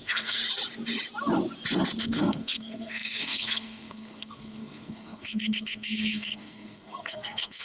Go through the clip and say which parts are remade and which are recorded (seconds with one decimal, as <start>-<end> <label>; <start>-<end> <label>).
0.0-0.4 remade; 0.4-2.0 recorded; 2.0-7.6 remade